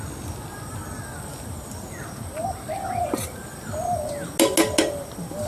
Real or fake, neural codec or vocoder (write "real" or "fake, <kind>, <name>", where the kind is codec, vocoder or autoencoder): real